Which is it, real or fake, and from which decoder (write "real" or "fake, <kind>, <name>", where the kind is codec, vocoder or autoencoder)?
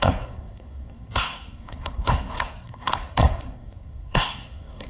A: fake, codec, SNAC